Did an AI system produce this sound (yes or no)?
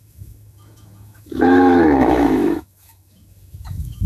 yes